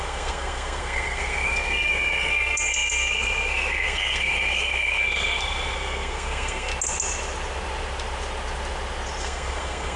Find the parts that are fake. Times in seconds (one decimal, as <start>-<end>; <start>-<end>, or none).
0.0-6.7; 9.2-10.0